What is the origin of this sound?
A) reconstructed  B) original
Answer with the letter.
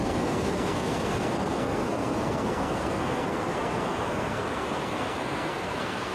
A